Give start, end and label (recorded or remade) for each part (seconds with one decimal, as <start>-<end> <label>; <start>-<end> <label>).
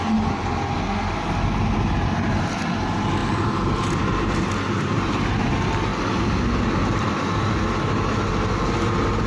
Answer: 0.0-9.3 recorded